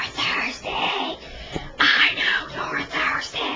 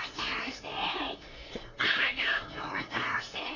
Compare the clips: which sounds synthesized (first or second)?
second